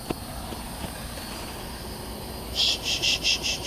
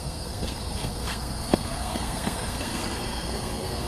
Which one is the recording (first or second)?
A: first